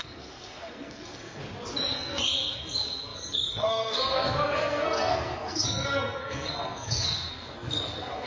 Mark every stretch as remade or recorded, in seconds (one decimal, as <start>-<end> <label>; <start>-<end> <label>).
0.0-1.4 remade; 1.4-1.9 recorded; 1.9-8.3 remade